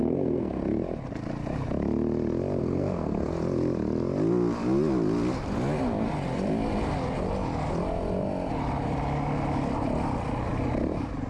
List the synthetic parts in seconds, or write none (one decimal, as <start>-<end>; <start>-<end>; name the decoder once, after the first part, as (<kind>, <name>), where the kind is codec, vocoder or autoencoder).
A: 0.0-0.6 (codec, SNAC); 2.6-3.3

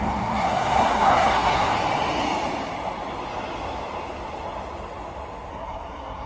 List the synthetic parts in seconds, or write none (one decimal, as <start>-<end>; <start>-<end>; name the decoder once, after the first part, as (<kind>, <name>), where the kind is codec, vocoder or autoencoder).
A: 0.0-1.7 (codec, SNAC); 5.5-6.3